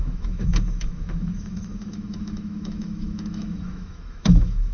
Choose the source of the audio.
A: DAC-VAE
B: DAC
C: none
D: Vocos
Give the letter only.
A